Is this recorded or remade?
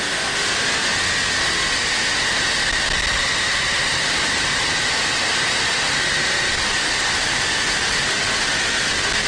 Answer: recorded